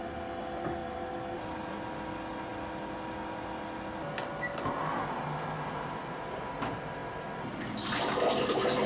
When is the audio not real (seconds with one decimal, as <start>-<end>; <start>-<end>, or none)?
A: 0.8-1.5